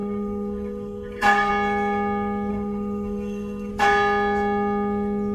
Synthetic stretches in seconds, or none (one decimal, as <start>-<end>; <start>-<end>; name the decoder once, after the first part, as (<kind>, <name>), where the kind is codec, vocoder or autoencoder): 0.0-1.5 (codec, SNAC); 2.5-3.7